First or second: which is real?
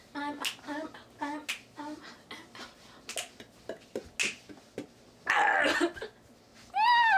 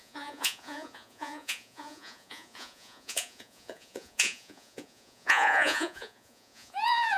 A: first